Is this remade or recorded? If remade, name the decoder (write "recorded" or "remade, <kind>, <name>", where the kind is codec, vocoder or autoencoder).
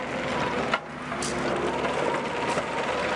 recorded